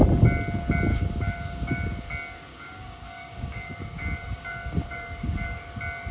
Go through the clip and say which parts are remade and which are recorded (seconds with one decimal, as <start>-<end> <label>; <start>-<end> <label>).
0.0-0.9 recorded; 0.9-2.0 remade; 2.0-2.5 recorded; 2.5-5.6 remade; 5.6-6.1 recorded